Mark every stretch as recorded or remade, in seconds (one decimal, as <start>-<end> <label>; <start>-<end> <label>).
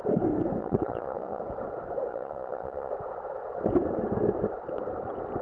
0.0-0.6 recorded; 0.6-1.4 remade; 1.4-2.1 recorded; 2.1-2.9 remade; 2.9-5.4 recorded